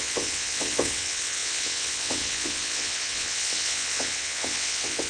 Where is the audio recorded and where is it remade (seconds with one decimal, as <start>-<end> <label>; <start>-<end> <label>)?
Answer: 0.0-5.1 remade